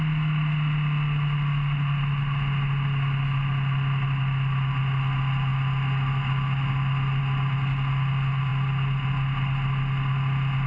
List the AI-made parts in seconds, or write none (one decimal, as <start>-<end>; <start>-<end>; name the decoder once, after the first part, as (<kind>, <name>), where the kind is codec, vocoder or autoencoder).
none